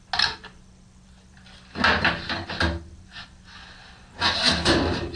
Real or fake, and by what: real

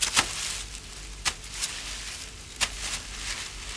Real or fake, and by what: real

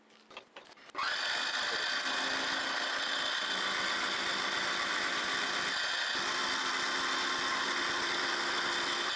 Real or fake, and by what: real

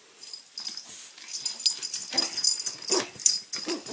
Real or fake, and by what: real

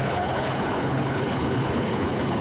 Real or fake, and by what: fake, codec, HILCodec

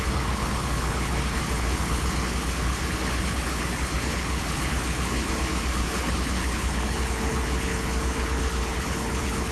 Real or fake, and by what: fake, codec, HILCodec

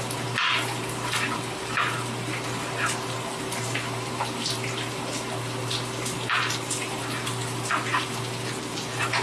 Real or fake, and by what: real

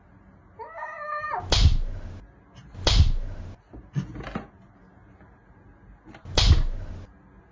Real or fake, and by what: real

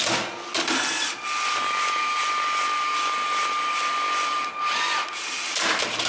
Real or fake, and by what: real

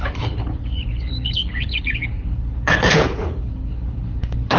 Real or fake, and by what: fake, codec, HILCodec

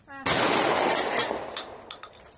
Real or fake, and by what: real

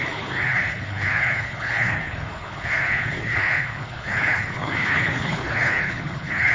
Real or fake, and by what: fake, codec, HILCodec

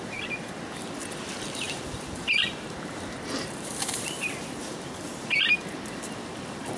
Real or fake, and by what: real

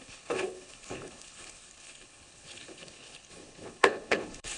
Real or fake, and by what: fake, codec, HILCodec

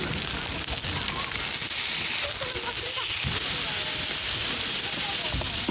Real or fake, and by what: real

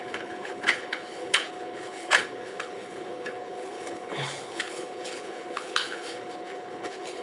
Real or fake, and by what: fake, codec, HILCodec